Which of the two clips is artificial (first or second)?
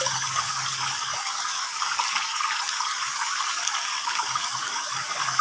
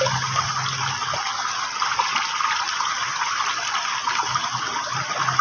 first